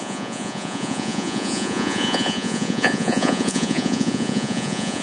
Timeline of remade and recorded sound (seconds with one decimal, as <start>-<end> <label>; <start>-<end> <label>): 0.0-5.0 remade